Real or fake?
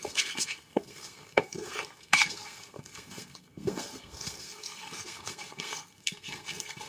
fake